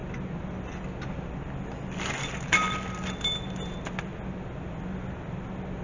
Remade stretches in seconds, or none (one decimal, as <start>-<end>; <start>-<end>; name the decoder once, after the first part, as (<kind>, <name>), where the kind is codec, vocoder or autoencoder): none